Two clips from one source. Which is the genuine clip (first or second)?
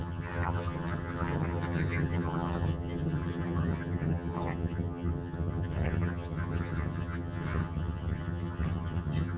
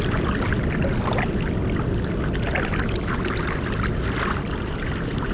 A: second